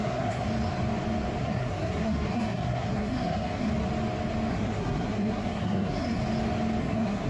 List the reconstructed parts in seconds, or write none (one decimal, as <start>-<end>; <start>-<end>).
0.0-0.5; 1.4-3.7; 4.5-6.2; 6.8-7.3